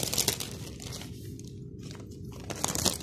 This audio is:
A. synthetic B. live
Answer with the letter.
B